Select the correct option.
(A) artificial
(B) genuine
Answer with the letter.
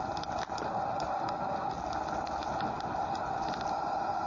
B